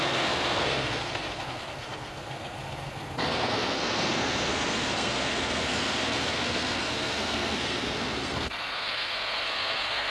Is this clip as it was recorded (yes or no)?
no